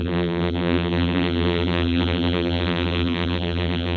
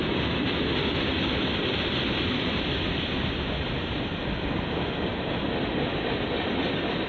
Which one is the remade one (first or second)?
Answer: first